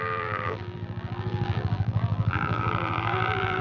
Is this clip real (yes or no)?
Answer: no